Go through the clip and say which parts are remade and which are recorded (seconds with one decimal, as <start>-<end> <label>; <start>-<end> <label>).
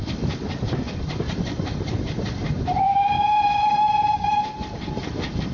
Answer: 0.0-2.9 recorded; 2.9-4.4 remade; 4.4-5.5 recorded